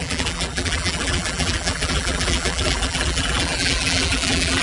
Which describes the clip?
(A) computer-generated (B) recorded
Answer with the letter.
A